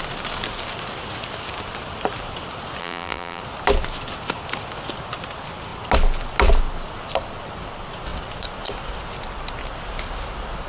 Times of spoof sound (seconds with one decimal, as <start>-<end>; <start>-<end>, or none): 2.8-3.4